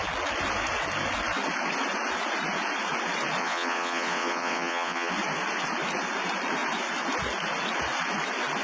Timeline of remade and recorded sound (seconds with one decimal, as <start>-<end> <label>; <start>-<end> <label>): 0.0-3.4 recorded; 3.4-5.1 remade; 5.1-8.6 recorded